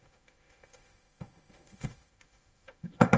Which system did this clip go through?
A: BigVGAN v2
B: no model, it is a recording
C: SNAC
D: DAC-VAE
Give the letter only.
D